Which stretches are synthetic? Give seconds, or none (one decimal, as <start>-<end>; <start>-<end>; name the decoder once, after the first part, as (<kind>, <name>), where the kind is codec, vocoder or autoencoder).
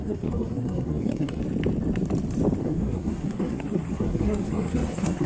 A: 0.0-1.4 (codec, SNAC); 2.6-5.3